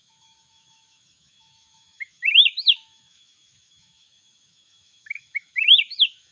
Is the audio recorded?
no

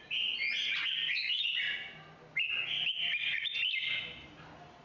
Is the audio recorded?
yes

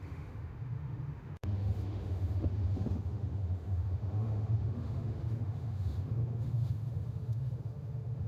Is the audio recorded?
no